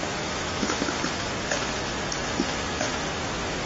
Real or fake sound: real